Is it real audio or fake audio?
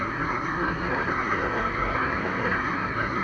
fake